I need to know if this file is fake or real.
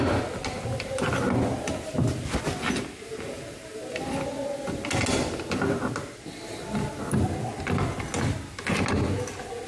real